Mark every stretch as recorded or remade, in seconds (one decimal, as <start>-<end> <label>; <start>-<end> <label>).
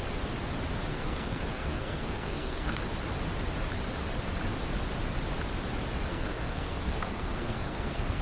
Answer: 0.0-0.9 recorded; 0.9-2.8 remade; 2.8-6.1 recorded; 6.1-8.2 remade